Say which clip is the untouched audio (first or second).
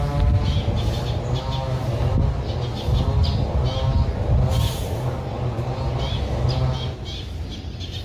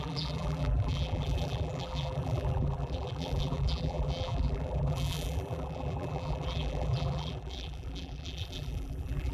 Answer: first